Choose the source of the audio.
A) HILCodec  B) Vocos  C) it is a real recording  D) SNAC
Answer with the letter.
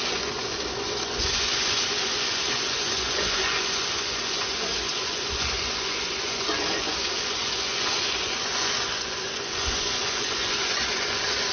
B